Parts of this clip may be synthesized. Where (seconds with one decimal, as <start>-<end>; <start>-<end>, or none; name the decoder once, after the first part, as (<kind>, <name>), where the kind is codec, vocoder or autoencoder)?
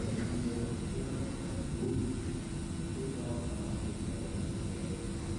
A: none